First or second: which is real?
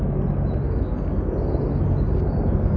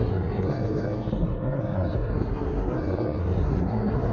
first